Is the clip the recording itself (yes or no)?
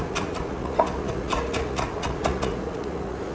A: no